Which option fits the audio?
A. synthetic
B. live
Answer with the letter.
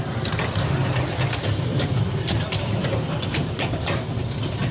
B